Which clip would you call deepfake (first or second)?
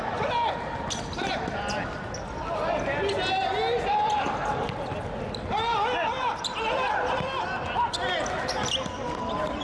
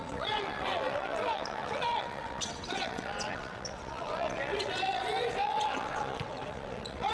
second